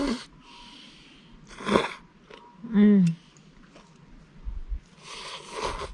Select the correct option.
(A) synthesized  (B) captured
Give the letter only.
B